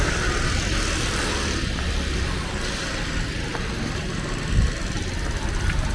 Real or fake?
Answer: real